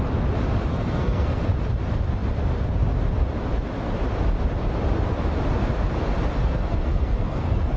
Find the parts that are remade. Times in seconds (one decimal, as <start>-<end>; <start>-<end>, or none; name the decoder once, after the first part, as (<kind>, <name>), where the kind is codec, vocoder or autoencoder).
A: 0.7-1.4 (codec, SNAC); 6.4-7.8